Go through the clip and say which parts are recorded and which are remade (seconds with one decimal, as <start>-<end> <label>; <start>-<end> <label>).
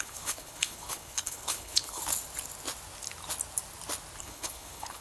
0.0-2.0 remade; 2.0-4.2 recorded; 4.2-5.0 remade